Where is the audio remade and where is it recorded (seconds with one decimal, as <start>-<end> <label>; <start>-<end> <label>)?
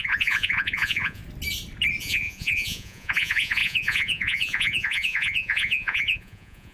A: 0.0-1.2 remade; 1.2-2.0 recorded; 2.0-6.7 remade